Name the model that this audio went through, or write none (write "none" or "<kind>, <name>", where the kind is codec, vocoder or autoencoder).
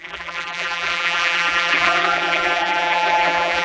vocoder, BigVGAN v2